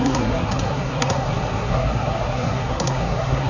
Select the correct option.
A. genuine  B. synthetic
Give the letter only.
B